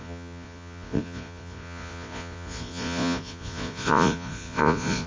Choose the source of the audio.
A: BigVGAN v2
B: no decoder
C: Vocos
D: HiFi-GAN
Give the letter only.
C